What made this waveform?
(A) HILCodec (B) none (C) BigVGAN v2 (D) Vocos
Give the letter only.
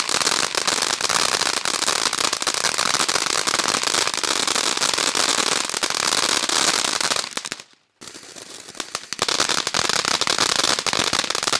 B